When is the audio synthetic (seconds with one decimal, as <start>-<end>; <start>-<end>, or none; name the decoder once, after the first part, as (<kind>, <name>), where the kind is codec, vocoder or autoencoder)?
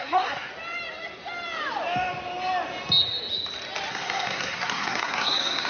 0.0-0.5 (codec, SNAC); 3.9-5.7